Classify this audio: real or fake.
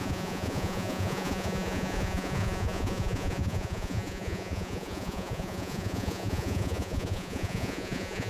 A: fake